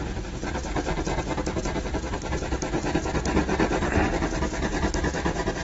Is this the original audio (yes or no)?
yes